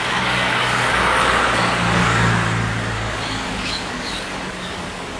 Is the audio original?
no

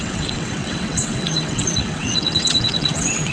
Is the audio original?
no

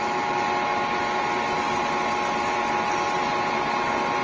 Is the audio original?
yes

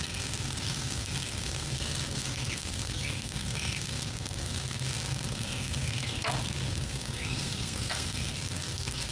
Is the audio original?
no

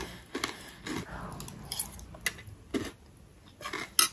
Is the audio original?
yes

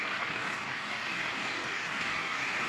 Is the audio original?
no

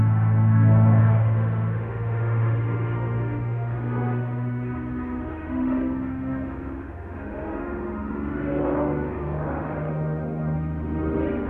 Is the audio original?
no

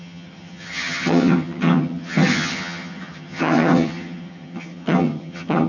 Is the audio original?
no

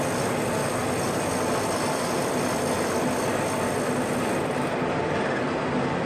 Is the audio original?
yes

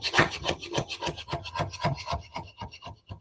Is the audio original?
no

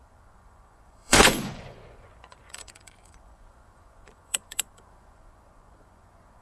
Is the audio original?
no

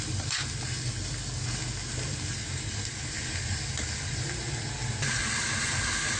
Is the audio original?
yes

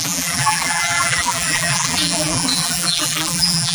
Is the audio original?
no